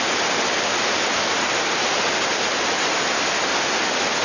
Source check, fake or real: real